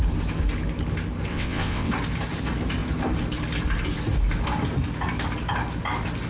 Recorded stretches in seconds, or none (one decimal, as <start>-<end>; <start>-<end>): 0.0-1.3; 1.9-6.3